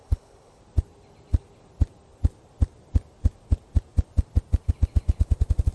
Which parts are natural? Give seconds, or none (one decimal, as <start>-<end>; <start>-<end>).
0.6-5.7